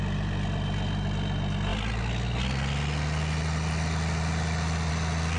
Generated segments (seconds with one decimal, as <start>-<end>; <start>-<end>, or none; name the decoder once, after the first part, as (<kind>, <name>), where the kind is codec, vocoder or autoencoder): none